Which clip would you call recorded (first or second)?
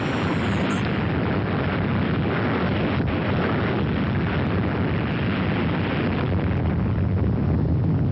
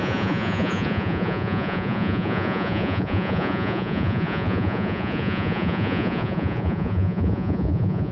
first